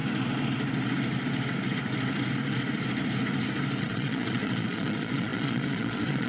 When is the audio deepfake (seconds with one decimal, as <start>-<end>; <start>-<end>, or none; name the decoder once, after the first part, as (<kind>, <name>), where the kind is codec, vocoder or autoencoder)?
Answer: 3.8-6.3 (vocoder, Vocos)